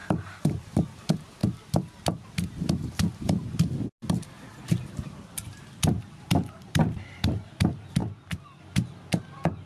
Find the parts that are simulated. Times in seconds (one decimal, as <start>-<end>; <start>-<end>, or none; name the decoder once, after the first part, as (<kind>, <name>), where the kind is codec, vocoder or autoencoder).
0.0-1.4 (vocoder, BigVGAN v2); 4.6-9.7